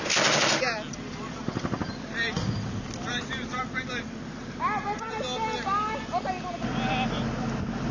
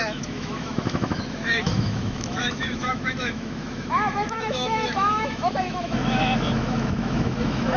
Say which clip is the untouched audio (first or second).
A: first